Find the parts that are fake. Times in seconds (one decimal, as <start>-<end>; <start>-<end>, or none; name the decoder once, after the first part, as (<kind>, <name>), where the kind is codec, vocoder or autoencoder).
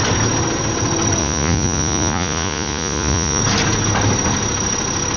1.2-3.4 (vocoder, Vocos)